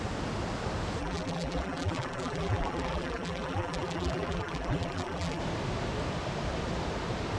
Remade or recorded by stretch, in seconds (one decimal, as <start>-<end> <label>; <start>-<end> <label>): 0.0-1.0 recorded; 1.0-5.4 remade; 5.4-7.4 recorded